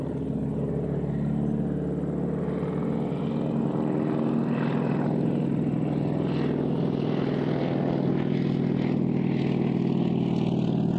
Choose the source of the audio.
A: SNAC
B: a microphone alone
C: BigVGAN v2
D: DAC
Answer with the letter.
B